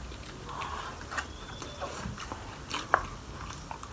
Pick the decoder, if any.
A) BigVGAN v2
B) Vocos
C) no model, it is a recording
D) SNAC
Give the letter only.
C